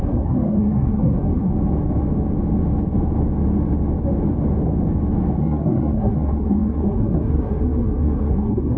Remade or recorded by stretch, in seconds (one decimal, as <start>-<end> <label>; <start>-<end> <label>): 0.0-1.5 remade; 1.5-5.4 recorded; 5.4-8.8 remade